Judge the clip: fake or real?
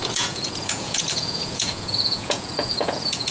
fake